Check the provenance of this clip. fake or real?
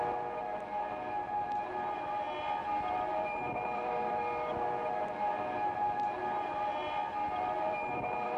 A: real